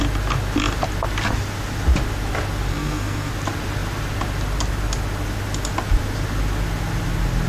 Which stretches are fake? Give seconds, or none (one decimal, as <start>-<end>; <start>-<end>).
2.7-3.3